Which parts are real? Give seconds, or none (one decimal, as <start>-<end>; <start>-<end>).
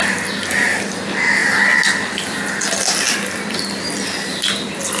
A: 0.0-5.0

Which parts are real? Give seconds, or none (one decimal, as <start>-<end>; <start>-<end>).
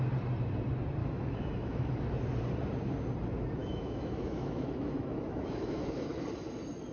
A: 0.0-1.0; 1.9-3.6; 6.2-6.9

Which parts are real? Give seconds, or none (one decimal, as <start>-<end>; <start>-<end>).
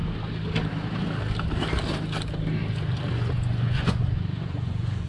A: 0.0-3.1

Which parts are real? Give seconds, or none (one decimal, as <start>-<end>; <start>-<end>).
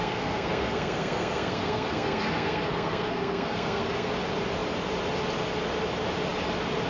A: 4.1-6.9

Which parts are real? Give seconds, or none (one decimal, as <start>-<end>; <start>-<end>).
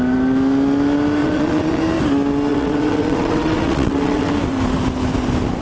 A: 0.0-1.2; 1.8-2.5; 4.3-5.6